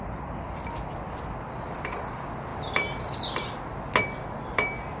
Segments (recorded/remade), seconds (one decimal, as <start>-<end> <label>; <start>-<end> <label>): 0.0-2.5 recorded; 2.5-3.2 remade; 3.2-5.0 recorded